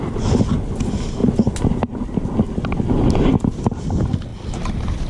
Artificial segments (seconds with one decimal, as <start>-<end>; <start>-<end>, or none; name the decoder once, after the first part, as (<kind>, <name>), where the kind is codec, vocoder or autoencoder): 0.0-1.2 (vocoder, BigVGAN v2); 3.4-5.1

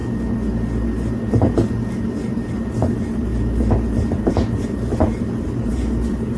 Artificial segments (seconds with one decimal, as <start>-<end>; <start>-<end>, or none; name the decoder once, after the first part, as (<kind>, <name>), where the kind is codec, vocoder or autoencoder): 2.3-3.3 (vocoder, BigVGAN v2); 4.3-6.4

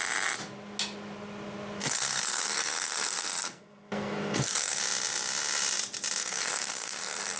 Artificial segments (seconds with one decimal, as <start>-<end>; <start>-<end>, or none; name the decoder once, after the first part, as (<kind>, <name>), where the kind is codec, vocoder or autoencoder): 1.8-4.8 (codec, SNAC); 6.2-7.4

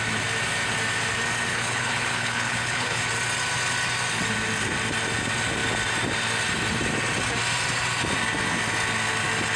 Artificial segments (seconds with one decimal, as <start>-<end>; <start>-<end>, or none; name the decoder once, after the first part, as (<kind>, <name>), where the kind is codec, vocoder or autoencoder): 1.5-3.0 (codec, HILCodec)

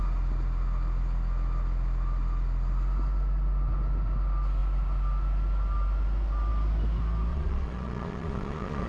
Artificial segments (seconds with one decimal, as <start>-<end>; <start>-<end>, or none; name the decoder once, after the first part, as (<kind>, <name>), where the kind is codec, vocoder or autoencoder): 7.3-8.9 (vocoder, Vocos)

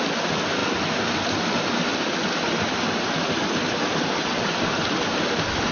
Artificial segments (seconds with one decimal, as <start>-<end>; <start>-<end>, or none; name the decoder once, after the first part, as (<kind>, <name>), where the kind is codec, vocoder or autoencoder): none